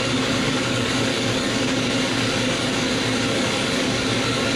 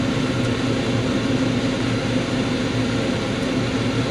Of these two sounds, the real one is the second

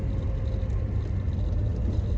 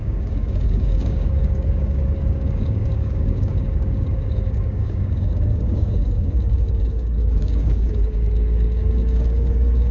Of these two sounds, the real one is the first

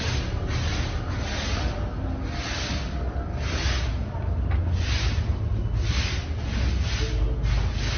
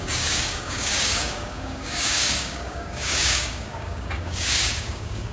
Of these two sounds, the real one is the first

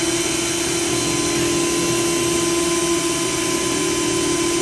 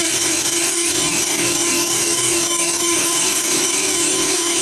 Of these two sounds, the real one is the first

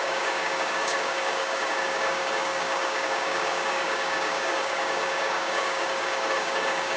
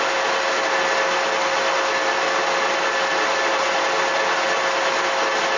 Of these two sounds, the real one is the second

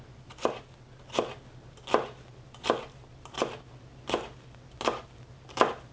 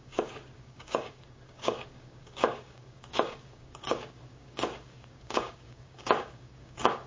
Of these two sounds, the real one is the first